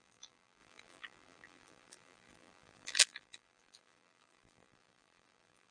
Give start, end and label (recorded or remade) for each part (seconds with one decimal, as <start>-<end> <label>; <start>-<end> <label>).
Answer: 0.0-5.7 remade